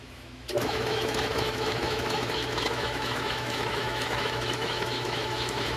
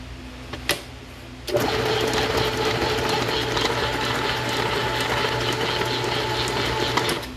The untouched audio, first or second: second